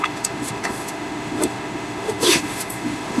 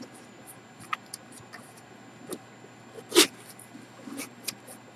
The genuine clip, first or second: second